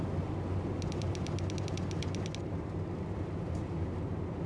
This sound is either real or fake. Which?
real